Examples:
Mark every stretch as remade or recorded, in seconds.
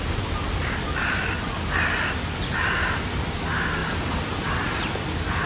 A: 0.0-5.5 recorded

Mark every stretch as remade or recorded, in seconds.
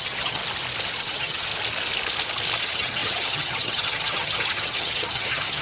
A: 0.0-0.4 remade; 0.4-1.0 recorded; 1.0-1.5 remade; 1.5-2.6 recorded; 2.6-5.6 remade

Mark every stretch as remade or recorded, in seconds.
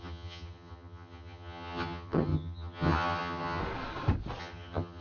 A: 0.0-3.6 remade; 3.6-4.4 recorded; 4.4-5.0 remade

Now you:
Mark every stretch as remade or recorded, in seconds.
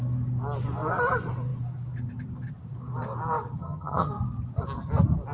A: 0.0-3.6 recorded; 3.6-4.1 remade; 4.1-5.3 recorded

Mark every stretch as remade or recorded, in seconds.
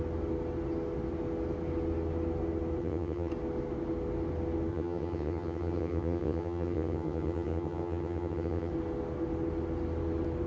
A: 0.0-2.8 recorded; 2.8-3.3 remade; 3.3-4.7 recorded; 4.7-8.7 remade; 8.7-10.5 recorded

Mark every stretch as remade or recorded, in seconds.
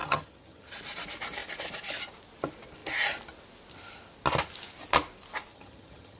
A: 0.0-0.7 remade; 0.7-5.5 recorded; 5.5-6.2 remade